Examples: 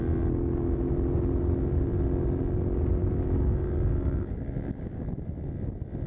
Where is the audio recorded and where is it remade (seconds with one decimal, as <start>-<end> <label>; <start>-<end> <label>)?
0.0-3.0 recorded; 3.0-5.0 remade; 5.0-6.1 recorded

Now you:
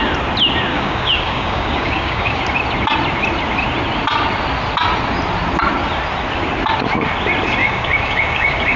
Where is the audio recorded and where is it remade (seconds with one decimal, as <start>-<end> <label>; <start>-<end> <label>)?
0.0-0.7 recorded; 0.7-2.4 remade; 2.4-7.6 recorded; 7.6-8.8 remade

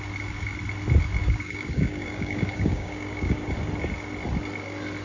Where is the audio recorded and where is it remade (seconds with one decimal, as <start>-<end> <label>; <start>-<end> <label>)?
0.0-1.2 recorded; 1.2-3.5 remade; 3.5-5.0 recorded

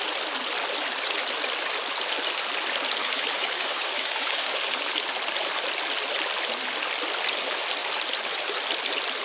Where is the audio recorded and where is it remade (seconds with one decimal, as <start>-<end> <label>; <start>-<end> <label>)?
0.0-3.0 recorded; 3.0-4.9 remade; 4.9-9.2 recorded

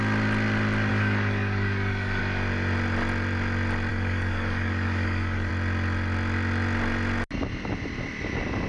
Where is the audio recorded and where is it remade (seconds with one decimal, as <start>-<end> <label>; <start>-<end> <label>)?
0.0-0.9 recorded; 0.9-2.2 remade; 2.2-3.9 recorded; 3.9-5.5 remade; 5.5-8.7 recorded